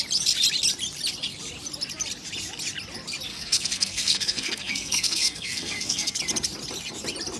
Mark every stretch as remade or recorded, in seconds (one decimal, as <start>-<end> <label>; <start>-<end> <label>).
0.0-3.3 recorded; 3.3-6.2 remade; 6.2-7.4 recorded